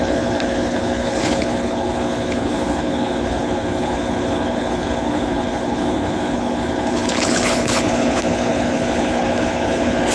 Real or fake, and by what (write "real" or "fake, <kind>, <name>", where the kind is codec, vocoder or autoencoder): fake, codec, HILCodec